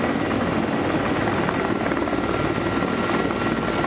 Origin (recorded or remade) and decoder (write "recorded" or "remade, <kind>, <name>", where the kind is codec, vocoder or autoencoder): recorded